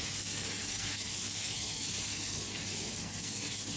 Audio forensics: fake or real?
fake